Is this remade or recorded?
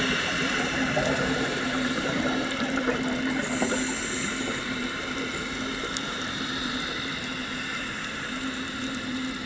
remade